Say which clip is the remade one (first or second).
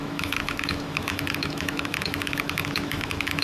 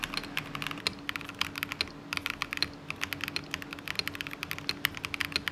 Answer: first